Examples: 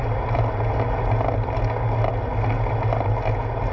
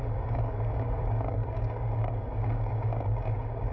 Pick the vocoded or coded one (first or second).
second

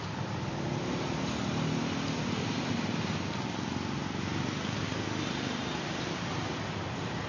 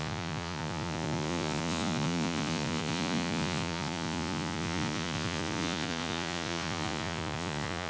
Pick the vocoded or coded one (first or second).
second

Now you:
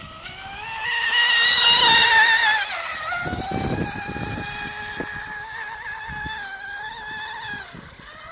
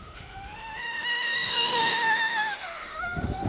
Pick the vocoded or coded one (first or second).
second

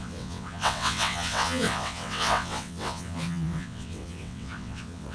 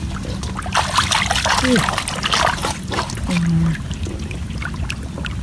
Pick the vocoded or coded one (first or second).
first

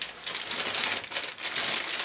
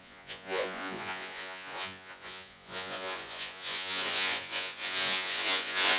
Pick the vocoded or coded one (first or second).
second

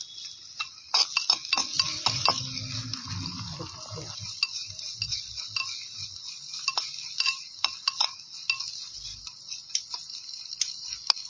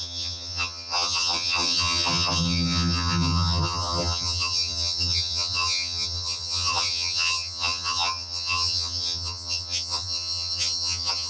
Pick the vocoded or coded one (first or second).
second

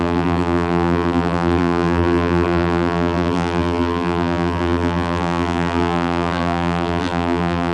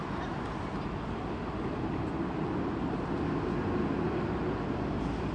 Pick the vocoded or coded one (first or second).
first